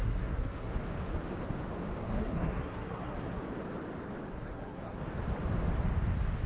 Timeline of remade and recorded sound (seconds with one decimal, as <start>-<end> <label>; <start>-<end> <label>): 0.0-0.7 remade; 0.7-2.0 recorded; 2.0-3.4 remade; 3.4-4.3 recorded; 4.3-5.0 remade; 5.0-6.5 recorded